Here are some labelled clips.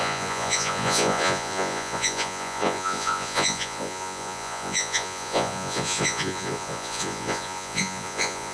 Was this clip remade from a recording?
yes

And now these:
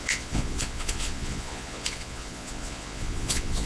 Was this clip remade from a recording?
yes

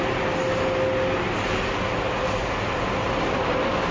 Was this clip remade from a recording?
no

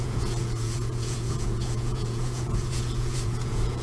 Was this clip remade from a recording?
yes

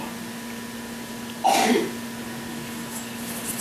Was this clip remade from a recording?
no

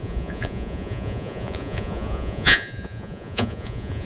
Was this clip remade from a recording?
yes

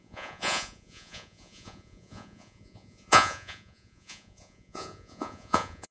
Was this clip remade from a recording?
yes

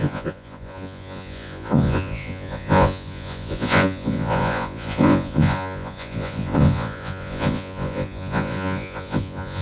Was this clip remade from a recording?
yes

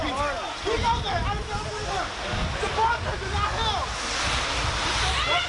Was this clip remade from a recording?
no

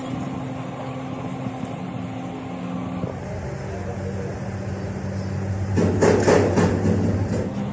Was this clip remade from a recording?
no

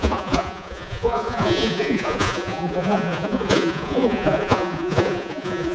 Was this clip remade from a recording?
yes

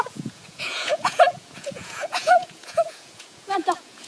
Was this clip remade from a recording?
yes